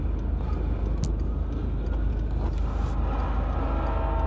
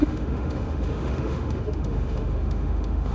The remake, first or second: second